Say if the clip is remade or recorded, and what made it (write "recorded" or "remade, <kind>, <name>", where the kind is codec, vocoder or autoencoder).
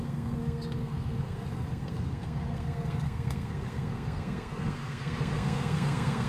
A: remade, codec, SNAC